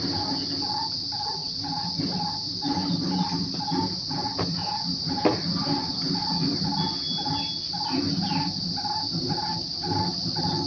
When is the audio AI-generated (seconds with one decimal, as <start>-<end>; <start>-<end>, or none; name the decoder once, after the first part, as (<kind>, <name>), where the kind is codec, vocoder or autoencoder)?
none